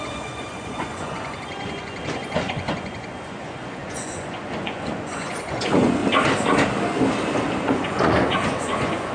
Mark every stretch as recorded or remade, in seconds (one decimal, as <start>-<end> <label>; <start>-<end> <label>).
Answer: 0.0-6.0 remade; 6.0-7.6 recorded; 7.6-9.1 remade